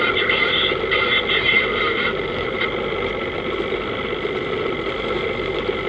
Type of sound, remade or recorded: recorded